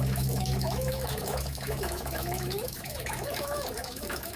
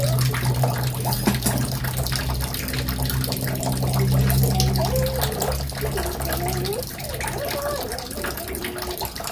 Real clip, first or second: second